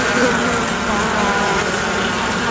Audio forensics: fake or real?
real